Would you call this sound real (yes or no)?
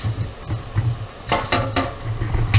yes